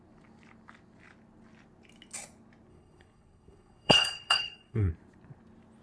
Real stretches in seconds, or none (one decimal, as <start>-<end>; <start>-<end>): 0.0-2.7; 4.9-5.8

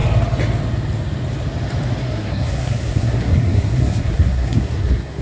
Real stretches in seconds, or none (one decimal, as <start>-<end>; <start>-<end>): 0.0-2.0

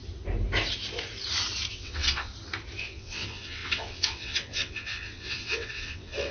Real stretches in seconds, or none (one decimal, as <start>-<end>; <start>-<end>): 0.0-1.7; 2.3-2.8